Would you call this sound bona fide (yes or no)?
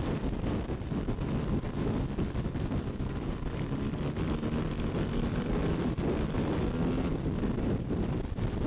yes